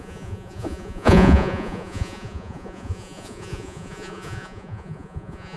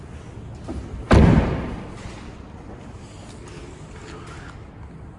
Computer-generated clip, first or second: first